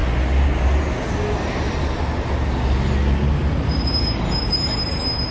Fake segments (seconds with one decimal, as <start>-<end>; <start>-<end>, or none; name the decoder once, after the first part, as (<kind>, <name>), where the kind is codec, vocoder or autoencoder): none

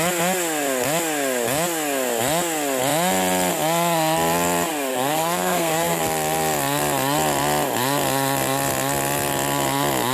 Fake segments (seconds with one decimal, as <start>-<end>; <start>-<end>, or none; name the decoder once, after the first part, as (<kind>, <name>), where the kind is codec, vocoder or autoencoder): 4.9-6.0 (codec, SNAC)